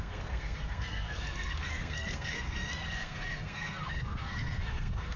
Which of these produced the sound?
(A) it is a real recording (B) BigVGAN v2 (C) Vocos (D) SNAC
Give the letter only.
D